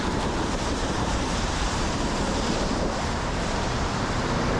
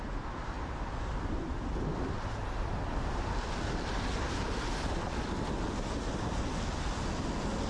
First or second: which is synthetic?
first